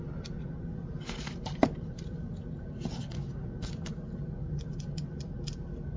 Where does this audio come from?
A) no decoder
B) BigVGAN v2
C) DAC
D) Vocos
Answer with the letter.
A